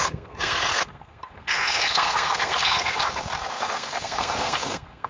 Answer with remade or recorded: remade